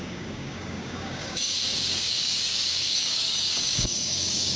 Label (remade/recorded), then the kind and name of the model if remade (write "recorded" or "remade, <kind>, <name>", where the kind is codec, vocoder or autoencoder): remade, codec, DAC